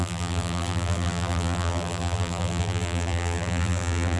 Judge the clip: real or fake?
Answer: fake